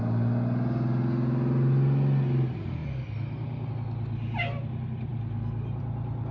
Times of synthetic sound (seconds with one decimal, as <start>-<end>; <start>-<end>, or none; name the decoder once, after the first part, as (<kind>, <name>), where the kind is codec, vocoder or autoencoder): none